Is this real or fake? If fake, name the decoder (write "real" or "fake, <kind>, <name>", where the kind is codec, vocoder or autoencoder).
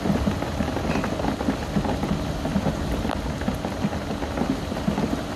real